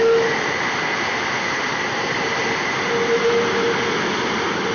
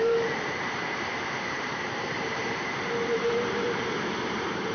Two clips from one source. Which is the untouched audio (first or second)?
first